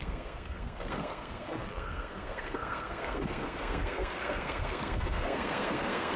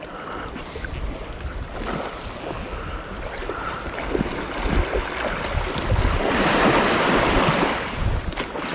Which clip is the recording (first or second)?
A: second